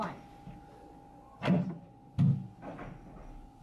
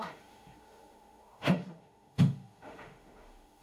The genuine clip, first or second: first